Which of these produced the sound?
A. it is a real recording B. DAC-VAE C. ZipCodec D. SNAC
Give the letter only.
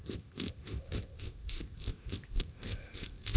C